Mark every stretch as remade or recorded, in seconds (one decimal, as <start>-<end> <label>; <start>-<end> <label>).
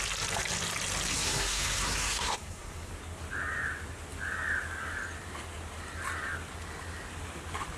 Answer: 0.0-1.1 recorded; 1.1-2.9 remade; 2.9-7.8 recorded